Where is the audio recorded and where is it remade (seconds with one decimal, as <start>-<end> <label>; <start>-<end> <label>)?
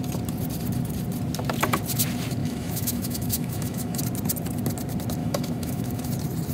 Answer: 0.0-2.4 recorded; 2.4-4.0 remade; 4.0-5.2 recorded; 5.2-6.1 remade; 6.1-6.5 recorded